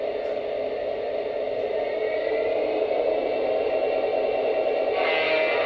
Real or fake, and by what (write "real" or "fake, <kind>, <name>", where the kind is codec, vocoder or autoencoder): real